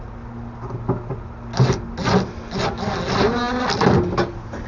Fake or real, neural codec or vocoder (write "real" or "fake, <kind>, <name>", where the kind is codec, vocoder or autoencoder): real